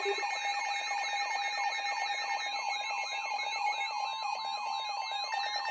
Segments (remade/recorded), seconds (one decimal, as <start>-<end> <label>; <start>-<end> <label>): 0.0-5.7 recorded